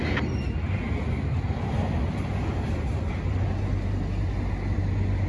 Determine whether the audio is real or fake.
real